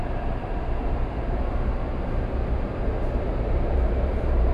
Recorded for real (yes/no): no